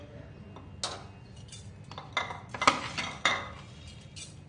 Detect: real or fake real